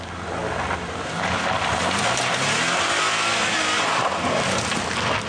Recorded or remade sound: recorded